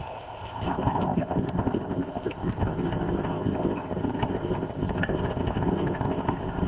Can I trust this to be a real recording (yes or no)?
no